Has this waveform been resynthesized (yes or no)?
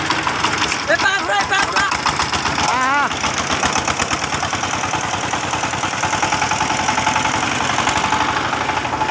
no